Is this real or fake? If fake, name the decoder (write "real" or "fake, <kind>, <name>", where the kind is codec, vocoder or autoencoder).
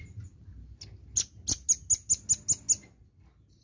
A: real